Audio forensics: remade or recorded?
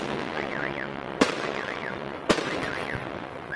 remade